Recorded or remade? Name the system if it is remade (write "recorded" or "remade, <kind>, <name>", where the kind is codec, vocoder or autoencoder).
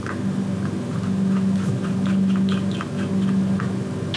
recorded